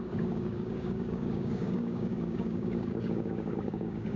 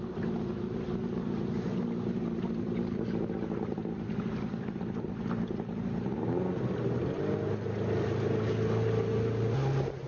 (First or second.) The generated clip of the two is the first